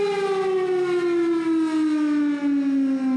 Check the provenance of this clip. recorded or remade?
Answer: recorded